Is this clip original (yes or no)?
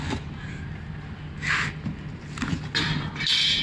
yes